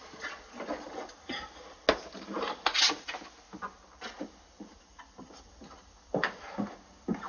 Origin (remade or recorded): recorded